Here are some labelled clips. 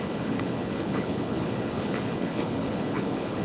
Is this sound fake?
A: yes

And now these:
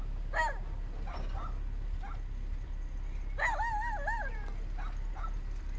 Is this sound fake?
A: no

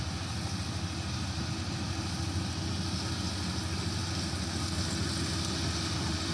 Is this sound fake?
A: no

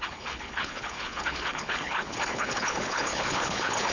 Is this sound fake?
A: yes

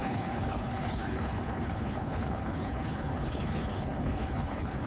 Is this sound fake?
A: yes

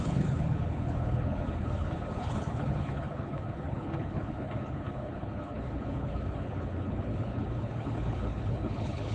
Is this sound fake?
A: yes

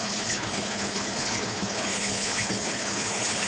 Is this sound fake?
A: yes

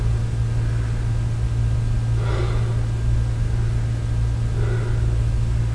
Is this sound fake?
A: no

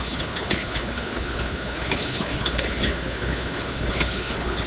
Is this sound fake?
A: yes